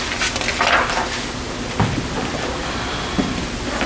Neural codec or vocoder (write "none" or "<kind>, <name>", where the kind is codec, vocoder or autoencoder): none